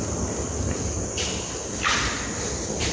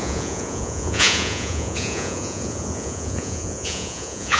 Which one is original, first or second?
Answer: first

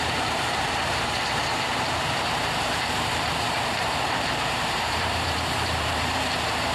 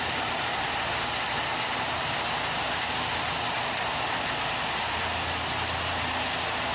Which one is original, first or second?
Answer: second